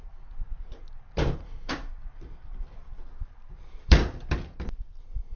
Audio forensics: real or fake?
fake